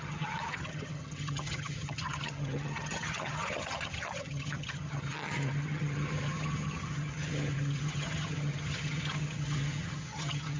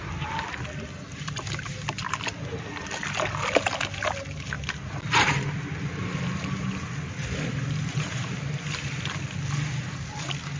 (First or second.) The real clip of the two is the second